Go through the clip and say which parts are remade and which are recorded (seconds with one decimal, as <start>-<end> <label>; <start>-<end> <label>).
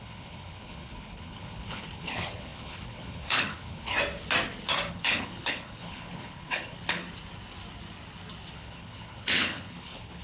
0.0-3.9 remade; 3.9-4.9 recorded; 4.9-7.0 remade; 7.0-8.5 recorded; 8.5-10.2 remade